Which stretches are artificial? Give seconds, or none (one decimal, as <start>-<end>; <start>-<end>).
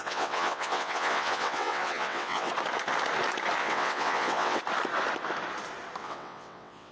0.0-2.5; 3.6-4.6; 6.0-6.9